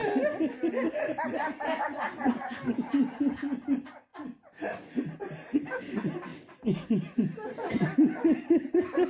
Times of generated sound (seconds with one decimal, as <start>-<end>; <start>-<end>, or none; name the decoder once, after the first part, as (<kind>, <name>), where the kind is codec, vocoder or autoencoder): none